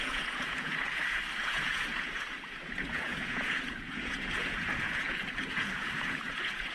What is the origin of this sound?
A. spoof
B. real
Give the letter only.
A